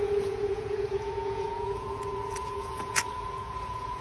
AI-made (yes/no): yes